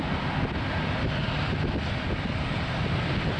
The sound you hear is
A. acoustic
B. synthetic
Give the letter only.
A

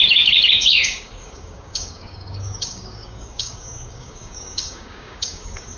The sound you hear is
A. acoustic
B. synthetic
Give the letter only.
B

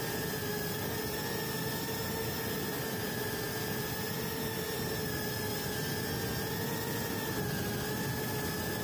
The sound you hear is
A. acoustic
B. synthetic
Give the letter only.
A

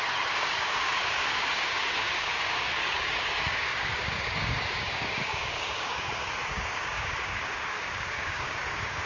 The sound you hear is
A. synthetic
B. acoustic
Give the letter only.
A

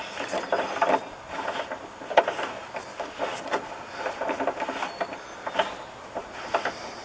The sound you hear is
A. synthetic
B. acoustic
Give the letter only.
B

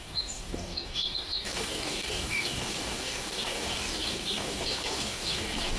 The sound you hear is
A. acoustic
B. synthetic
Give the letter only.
B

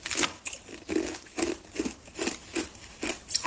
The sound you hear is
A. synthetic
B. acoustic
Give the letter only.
B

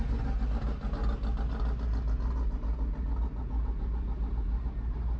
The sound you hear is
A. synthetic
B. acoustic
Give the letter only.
B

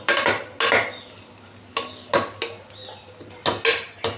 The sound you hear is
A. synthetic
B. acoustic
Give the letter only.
B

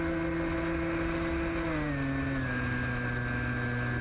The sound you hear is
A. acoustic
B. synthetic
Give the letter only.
A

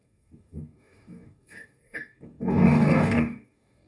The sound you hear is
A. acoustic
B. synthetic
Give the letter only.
B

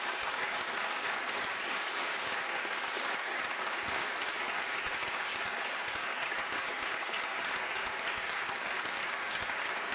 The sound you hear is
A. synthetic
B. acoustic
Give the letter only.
A